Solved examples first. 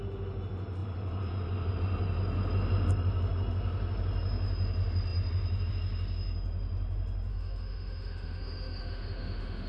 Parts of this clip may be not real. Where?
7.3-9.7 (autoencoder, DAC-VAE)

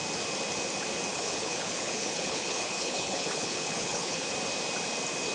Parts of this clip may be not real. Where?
1.1-4.3 (codec, HILCodec)

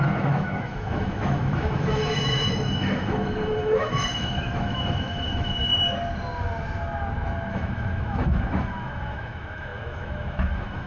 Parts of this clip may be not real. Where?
0.0-5.7 (autoencoder, DAC-VAE); 7.5-10.9